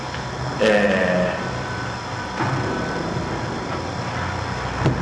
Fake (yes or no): no